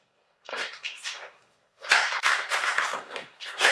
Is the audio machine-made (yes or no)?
yes